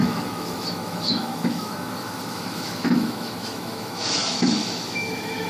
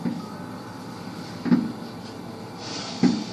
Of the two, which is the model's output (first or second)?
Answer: first